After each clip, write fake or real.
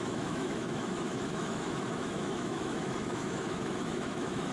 fake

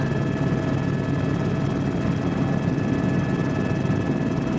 real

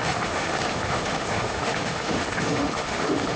fake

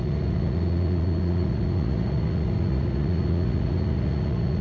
fake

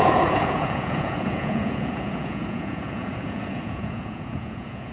fake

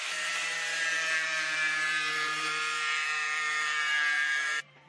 fake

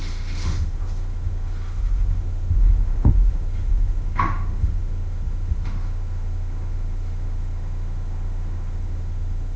fake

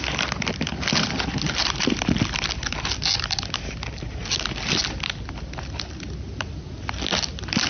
real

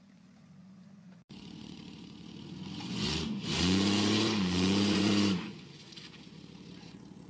fake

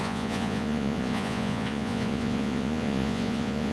fake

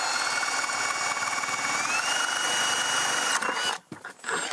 real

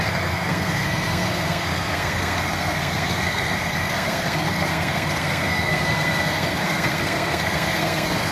fake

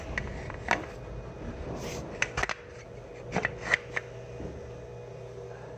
real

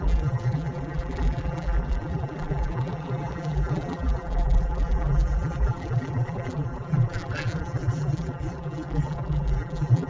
fake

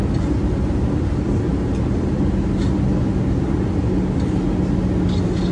real